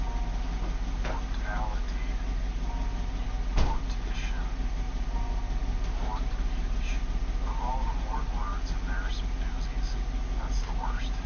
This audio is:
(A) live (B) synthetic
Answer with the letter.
A